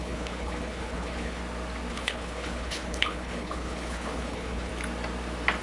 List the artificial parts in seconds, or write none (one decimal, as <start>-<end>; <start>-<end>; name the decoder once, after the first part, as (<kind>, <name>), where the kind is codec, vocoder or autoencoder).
0.0-1.4 (codec, HILCodec); 1.9-4.7